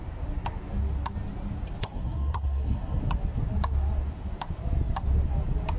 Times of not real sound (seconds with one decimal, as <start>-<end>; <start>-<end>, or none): 1.8-3.0